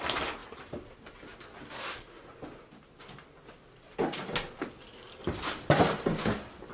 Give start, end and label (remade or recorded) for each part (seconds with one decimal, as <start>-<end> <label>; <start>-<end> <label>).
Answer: 0.0-6.7 recorded